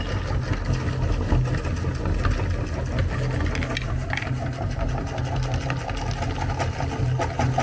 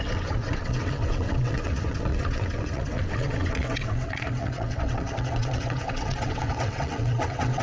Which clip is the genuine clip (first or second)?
first